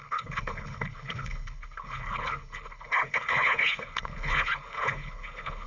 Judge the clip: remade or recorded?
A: remade